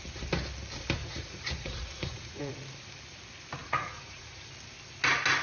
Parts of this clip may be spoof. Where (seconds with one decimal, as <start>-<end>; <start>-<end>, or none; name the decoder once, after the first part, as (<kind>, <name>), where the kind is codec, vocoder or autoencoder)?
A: 1.0-2.5 (vocoder, Vocos); 3.6-4.5